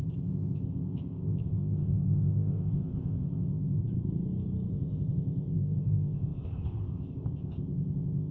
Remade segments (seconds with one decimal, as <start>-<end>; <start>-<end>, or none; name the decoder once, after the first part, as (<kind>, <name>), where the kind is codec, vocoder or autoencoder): 0.0-3.8 (codec, ZipCodec); 4.7-8.3